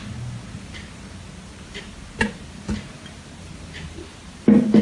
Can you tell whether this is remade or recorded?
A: recorded